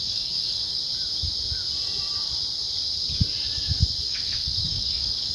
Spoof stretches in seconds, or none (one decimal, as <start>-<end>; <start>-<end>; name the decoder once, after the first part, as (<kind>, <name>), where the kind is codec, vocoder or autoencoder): 0.0-0.8 (codec, DAC); 4.0-5.3